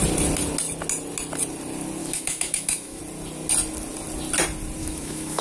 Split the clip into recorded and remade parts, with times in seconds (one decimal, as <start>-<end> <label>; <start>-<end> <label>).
0.0-2.0 recorded; 2.0-3.0 remade; 3.0-4.8 recorded; 4.8-5.4 remade